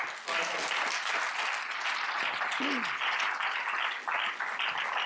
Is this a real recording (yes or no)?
yes